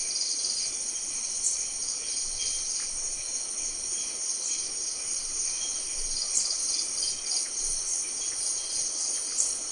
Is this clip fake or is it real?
real